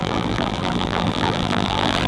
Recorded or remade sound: remade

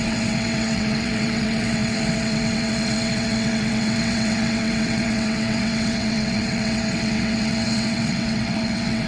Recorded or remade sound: remade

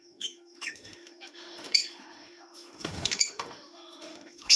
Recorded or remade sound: remade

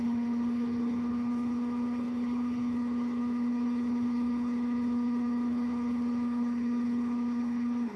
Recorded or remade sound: remade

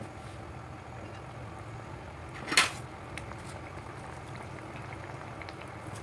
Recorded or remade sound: recorded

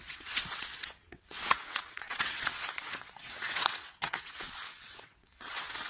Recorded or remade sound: remade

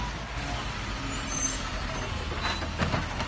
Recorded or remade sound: recorded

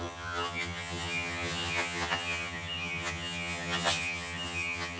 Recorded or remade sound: remade